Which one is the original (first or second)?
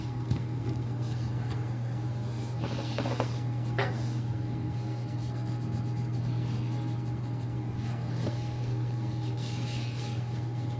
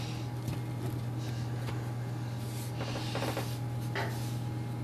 second